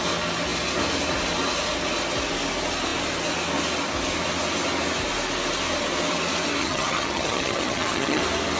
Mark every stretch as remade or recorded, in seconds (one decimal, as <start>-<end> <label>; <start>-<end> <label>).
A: 0.0-6.6 recorded; 6.6-8.2 remade; 8.2-8.6 recorded